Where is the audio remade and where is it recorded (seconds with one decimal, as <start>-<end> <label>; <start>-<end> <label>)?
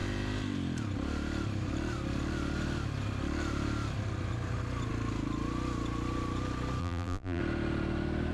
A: 0.0-6.8 recorded; 6.8-7.4 remade; 7.4-8.3 recorded